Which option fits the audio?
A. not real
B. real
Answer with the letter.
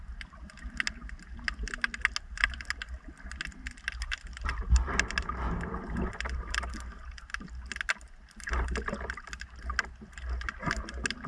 B